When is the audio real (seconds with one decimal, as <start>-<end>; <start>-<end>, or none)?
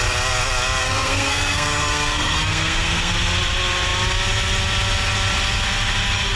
0.0-0.8; 3.1-6.4